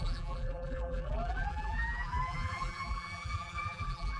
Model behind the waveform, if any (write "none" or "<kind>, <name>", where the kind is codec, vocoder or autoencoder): vocoder, BigVGAN v2